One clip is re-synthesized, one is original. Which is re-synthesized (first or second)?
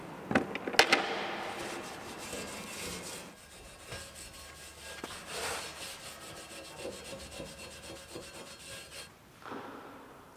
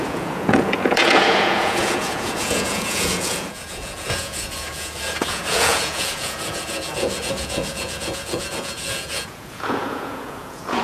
second